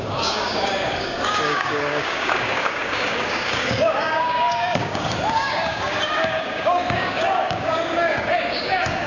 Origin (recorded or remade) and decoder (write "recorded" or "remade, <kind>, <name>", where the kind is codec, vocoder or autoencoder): remade, codec, DAC